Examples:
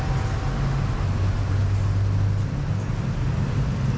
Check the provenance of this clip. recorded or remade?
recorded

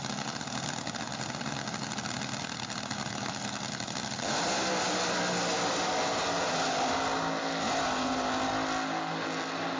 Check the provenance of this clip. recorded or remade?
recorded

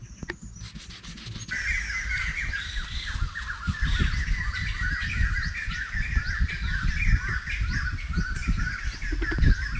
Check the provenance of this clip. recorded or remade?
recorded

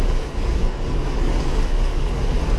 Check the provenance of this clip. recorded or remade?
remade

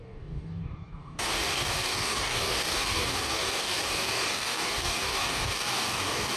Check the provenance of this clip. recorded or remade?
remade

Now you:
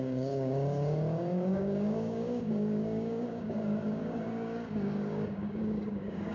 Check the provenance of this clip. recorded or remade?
remade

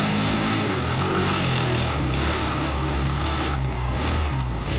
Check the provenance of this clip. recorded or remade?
remade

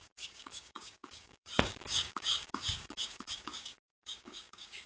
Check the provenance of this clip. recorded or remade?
remade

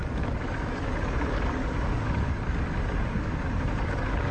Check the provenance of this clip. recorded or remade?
remade